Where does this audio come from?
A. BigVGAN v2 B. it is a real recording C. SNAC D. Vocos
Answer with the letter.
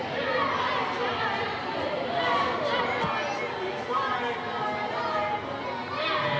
B